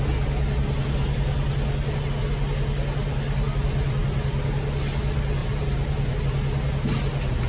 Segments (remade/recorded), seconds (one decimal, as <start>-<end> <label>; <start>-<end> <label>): 0.0-5.4 recorded; 5.4-6.2 remade; 6.2-7.5 recorded